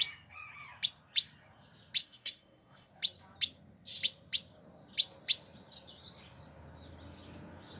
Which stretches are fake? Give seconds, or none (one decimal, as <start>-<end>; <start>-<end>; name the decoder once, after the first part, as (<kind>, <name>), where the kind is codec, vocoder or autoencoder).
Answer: 2.0-2.9 (codec, SNAC)